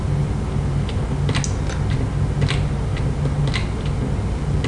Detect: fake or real real